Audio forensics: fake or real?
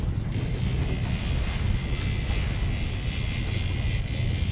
real